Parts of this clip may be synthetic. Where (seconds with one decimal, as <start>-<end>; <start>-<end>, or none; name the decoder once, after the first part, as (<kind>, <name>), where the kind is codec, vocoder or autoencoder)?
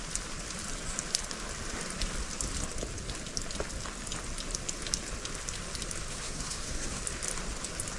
6.1-7.0 (codec, SNAC)